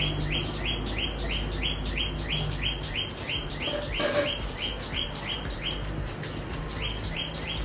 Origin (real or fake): real